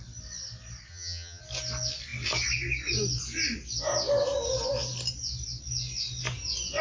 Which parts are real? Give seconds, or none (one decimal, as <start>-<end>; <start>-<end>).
0.0-0.9; 1.4-6.8